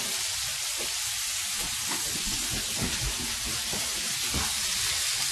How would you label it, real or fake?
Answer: real